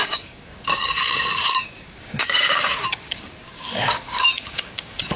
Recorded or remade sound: remade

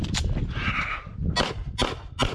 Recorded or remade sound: recorded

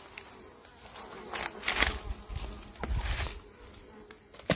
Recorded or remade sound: recorded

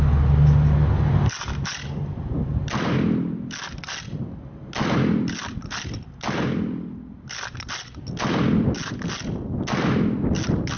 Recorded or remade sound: recorded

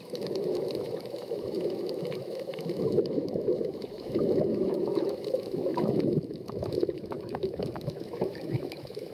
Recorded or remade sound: remade